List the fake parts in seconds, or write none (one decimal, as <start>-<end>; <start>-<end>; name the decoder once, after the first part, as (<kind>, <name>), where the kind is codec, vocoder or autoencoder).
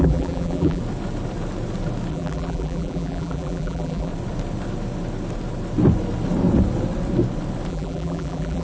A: 0.0-0.8 (vocoder, BigVGAN v2); 2.1-4.1; 7.7-8.6